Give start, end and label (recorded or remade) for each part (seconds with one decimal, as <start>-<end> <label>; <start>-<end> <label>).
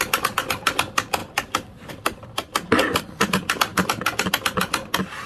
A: 0.0-1.2 recorded; 1.2-1.9 remade; 1.9-5.3 recorded